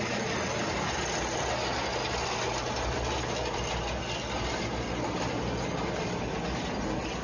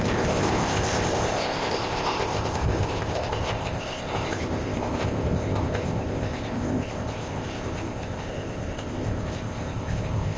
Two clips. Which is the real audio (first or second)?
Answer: first